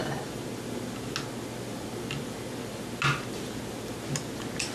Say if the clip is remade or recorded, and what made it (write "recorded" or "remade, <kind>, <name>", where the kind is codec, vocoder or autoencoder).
recorded